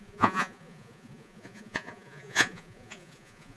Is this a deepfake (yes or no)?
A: yes